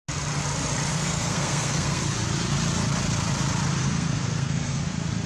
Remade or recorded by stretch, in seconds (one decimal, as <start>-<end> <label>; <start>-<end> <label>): 0.0-0.9 recorded; 0.9-2.0 remade; 2.0-3.8 recorded; 3.8-4.8 remade; 4.8-5.3 recorded